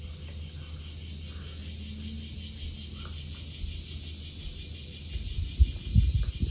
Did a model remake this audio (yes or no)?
no